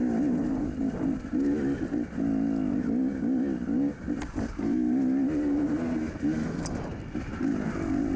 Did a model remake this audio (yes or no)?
no